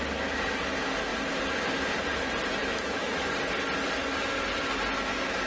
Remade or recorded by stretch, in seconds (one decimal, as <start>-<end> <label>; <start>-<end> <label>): 0.0-2.6 recorded; 2.6-3.1 remade; 3.1-5.5 recorded

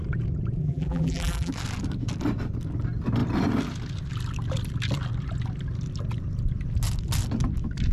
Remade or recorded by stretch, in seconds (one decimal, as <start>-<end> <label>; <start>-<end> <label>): 0.0-0.6 recorded; 0.6-1.5 remade; 1.5-7.9 recorded

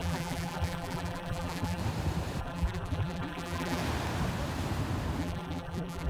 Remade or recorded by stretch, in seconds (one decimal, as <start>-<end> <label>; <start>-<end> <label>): 0.0-1.8 remade; 1.8-2.4 recorded; 2.4-3.8 remade; 3.8-5.2 recorded; 5.2-6.1 remade

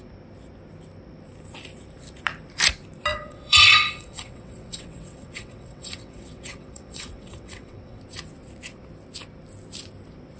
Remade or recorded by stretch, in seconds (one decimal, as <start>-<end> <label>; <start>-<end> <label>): 0.0-3.1 recorded; 3.1-8.0 remade; 8.0-10.4 recorded